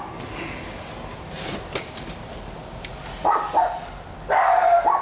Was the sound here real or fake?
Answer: real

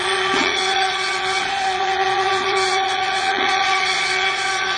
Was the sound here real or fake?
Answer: fake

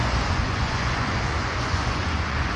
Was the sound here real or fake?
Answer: fake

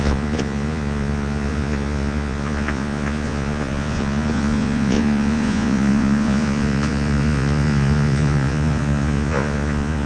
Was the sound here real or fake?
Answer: fake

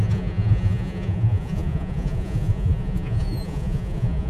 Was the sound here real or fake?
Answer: fake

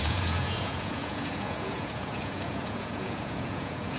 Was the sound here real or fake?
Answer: fake